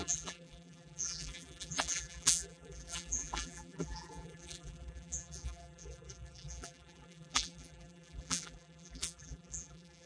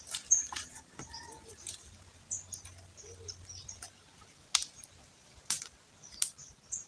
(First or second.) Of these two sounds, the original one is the second